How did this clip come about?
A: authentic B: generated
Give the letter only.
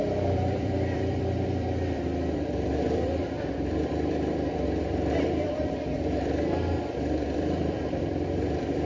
B